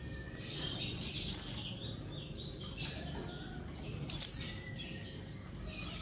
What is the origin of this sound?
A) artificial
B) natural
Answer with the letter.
B